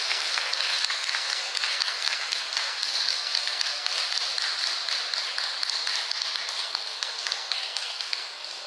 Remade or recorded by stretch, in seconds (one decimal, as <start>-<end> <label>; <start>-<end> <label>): 0.0-3.9 remade; 3.9-6.6 recorded; 6.6-8.7 remade

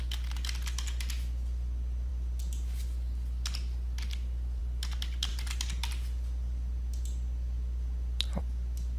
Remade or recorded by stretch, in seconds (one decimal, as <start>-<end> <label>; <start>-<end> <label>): 0.0-9.0 recorded

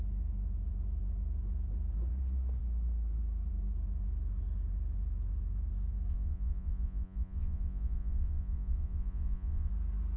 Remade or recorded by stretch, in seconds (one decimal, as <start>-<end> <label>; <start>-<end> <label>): 0.0-6.1 recorded; 6.1-9.7 remade; 9.7-10.2 recorded

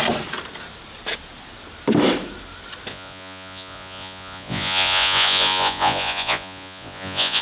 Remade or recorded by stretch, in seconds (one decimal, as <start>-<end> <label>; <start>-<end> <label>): 0.0-2.9 recorded; 2.9-7.4 remade

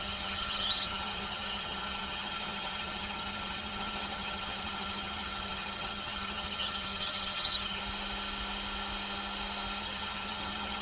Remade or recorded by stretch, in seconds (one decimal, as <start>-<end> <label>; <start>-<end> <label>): 0.0-7.8 remade; 7.8-9.8 recorded; 9.8-10.8 remade